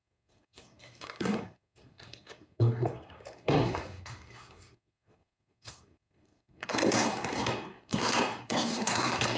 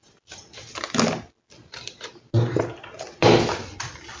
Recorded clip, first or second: second